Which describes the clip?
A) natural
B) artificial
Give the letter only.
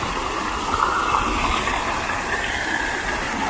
A